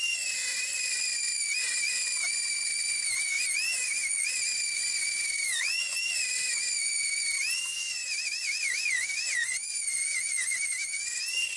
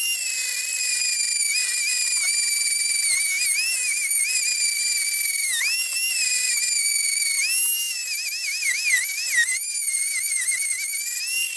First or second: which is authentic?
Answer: second